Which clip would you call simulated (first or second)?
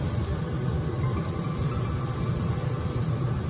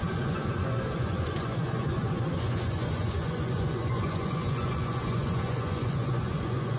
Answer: second